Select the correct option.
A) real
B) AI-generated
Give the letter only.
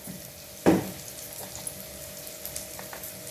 A